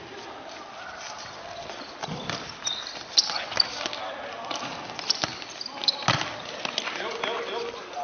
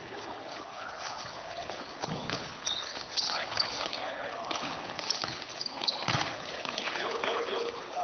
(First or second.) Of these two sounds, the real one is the first